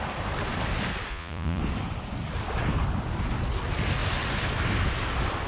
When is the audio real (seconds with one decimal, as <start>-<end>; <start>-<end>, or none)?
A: 0.0-1.1; 1.6-5.5